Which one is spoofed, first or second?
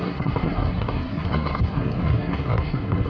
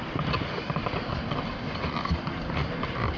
first